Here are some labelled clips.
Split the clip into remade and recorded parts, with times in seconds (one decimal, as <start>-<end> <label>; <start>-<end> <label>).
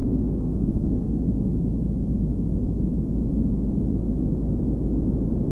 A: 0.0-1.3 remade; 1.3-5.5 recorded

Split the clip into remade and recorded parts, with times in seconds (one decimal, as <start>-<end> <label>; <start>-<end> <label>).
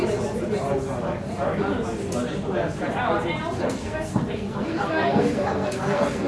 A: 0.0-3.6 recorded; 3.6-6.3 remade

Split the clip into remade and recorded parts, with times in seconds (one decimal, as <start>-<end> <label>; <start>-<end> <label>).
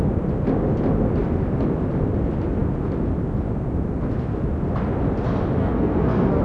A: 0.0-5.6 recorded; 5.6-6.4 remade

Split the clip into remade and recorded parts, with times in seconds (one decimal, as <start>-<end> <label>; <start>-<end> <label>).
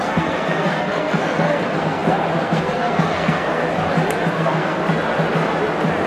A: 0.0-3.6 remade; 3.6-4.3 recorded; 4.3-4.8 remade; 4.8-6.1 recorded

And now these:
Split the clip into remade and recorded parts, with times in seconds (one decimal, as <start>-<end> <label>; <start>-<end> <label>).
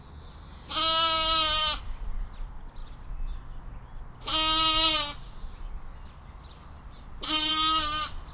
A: 0.0-8.3 recorded